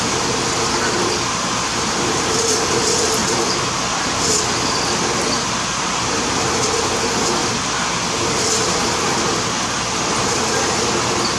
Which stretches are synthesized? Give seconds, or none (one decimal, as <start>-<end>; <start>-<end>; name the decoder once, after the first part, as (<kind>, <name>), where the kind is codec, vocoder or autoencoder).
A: none